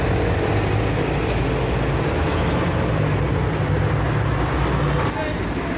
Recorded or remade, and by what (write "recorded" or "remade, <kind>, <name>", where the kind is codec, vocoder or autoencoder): recorded